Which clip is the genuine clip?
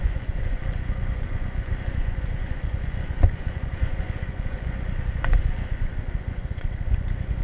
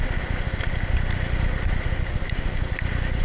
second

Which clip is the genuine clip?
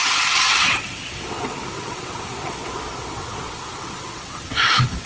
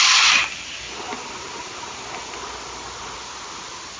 second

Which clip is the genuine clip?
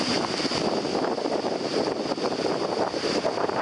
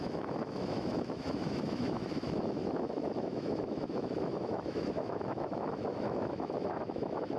first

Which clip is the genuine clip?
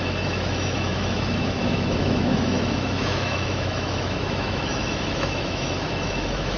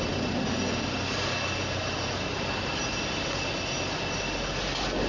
second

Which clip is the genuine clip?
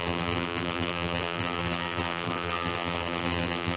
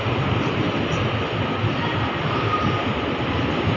second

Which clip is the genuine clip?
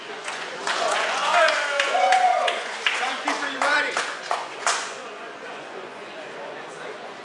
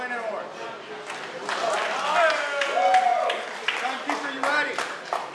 second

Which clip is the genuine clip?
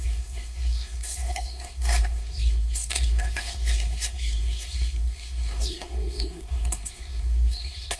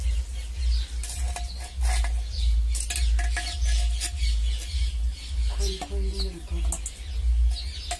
second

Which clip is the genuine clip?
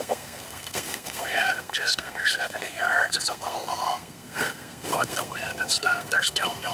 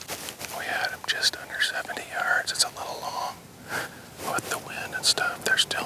second